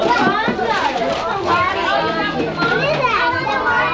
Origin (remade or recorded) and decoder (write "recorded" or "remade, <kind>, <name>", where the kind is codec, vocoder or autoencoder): recorded